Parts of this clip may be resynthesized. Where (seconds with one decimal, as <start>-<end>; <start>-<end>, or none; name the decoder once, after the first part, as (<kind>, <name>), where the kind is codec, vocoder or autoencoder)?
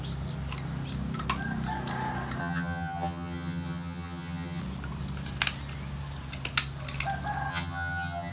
2.4-4.6 (vocoder, HiFi-GAN); 7.5-8.3